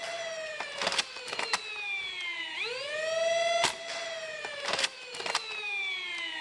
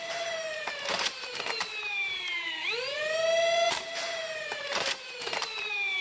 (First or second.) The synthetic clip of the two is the second